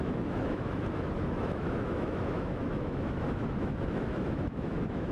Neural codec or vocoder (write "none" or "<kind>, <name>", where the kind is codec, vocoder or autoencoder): autoencoder, DAC-VAE